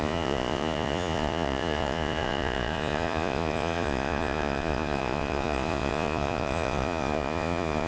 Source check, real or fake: fake